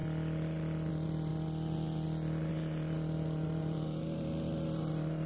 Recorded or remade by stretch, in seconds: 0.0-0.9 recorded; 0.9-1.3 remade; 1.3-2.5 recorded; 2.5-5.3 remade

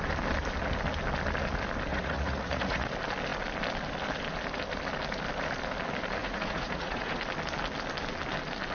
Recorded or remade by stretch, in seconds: 0.0-1.9 recorded; 1.9-2.9 remade; 2.9-6.2 recorded; 6.2-7.2 remade; 7.2-8.7 recorded

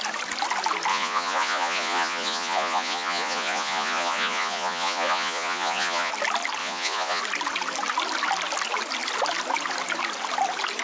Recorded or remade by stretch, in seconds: 0.0-0.9 recorded; 0.9-6.1 remade; 6.1-6.6 recorded; 6.6-7.2 remade; 7.2-10.8 recorded

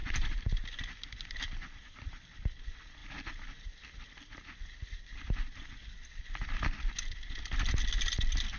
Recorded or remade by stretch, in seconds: 0.0-2.6 remade; 2.6-3.0 recorded; 3.0-6.2 remade; 6.2-8.6 recorded

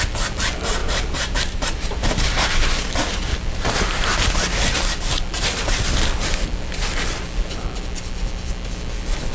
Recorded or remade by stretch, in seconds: 0.0-0.8 recorded; 0.8-2.3 remade; 2.3-9.3 recorded